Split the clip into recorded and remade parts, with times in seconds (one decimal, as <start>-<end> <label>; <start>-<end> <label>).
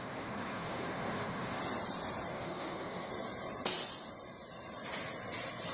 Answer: 0.0-1.6 remade; 1.6-2.3 recorded; 2.3-3.1 remade; 3.1-5.7 recorded